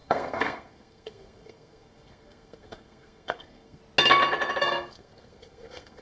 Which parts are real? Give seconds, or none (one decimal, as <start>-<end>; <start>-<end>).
3.8-4.6